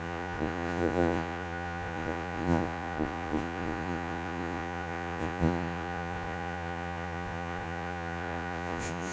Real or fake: fake